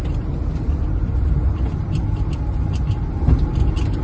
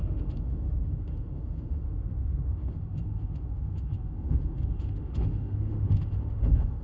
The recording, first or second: first